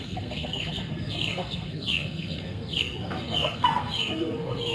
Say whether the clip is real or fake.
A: fake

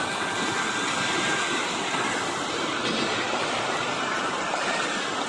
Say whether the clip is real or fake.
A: real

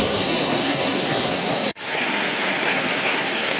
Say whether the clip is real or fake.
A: fake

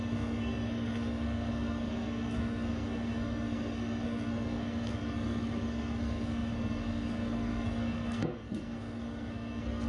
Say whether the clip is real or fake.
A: fake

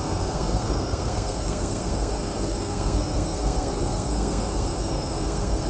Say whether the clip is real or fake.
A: fake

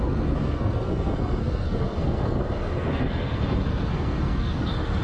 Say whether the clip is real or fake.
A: fake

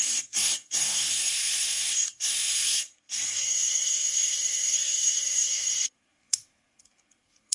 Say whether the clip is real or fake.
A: fake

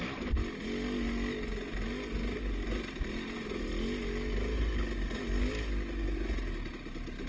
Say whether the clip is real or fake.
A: real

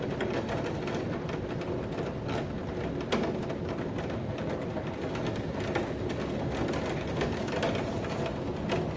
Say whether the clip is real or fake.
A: real